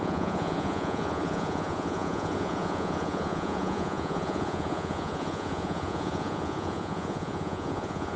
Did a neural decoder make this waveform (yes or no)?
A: yes